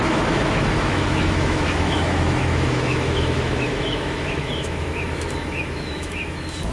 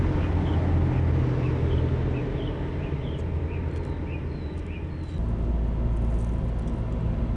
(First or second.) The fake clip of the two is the first